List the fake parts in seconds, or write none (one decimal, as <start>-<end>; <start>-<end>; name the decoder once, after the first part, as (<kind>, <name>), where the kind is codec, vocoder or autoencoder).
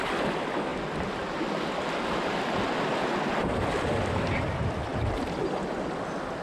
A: none